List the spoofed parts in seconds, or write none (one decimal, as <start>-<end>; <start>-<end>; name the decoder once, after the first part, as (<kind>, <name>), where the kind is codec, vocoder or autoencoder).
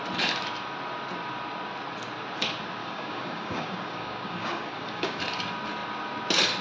2.8-5.2 (codec, DAC)